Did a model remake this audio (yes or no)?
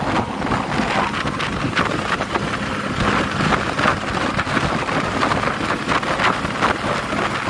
no